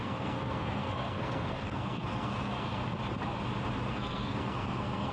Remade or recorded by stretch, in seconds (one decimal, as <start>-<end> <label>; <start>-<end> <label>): 0.0-2.8 remade; 2.8-3.9 recorded; 3.9-5.1 remade

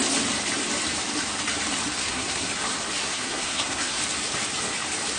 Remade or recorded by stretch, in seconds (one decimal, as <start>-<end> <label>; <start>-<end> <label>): 0.0-2.0 recorded; 2.0-2.5 remade; 2.5-3.0 recorded; 3.0-4.0 remade; 4.0-5.2 recorded

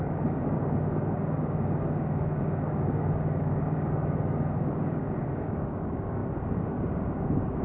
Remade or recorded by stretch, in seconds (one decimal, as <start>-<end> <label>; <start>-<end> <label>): 0.0-7.6 remade

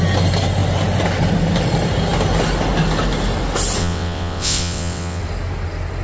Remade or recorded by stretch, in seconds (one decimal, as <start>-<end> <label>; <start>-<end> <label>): 0.0-3.8 recorded; 3.8-5.2 remade; 5.2-6.0 recorded

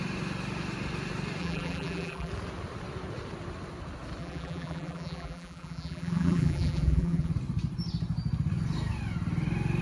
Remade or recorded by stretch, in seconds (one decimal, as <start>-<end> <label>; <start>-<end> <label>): 0.0-1.4 recorded; 1.4-2.3 remade; 2.3-4.2 recorded; 4.2-7.3 remade; 7.3-9.8 recorded

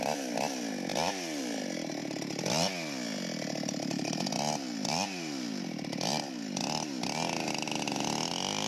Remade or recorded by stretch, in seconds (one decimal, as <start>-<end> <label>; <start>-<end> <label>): 0.0-8.7 recorded

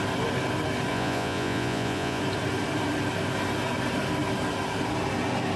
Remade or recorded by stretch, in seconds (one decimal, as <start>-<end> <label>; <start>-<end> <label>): 0.0-0.9 recorded; 0.9-2.2 remade; 2.2-5.6 recorded

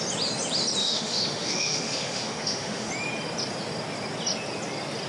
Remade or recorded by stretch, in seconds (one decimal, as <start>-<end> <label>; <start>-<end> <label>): 0.0-0.8 recorded; 0.8-2.9 remade; 2.9-5.1 recorded